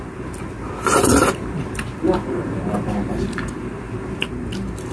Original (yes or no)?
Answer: yes